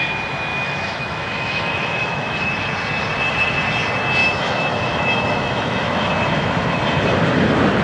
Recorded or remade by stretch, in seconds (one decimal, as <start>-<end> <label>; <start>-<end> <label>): 0.0-0.5 recorded; 0.5-2.5 remade; 2.5-4.2 recorded; 4.2-6.1 remade; 6.1-7.8 recorded